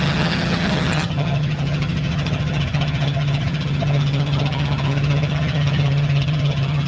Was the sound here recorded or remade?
remade